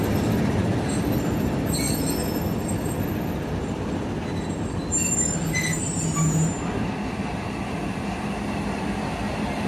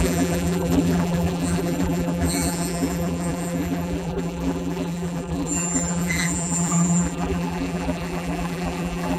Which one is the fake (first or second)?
second